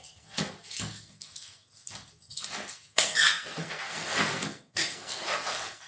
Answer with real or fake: fake